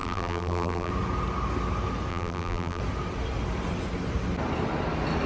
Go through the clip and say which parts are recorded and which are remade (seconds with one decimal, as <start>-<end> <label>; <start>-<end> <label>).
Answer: 0.0-0.9 remade; 0.9-2.1 recorded; 2.1-2.8 remade; 2.8-5.3 recorded